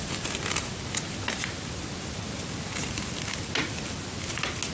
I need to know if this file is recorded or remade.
recorded